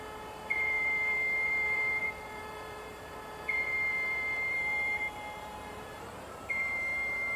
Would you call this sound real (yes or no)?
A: no